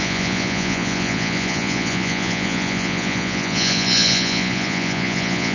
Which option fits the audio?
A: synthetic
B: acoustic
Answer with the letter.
A